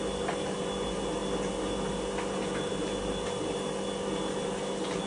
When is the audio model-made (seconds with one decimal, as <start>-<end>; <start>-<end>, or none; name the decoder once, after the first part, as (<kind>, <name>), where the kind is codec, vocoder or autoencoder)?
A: none